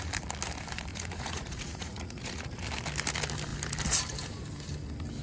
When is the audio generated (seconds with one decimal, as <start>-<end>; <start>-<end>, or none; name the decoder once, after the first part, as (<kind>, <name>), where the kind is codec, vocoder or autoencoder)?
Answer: 0.9-2.6 (vocoder, Vocos)